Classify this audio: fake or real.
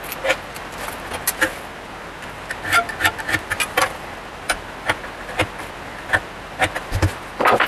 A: real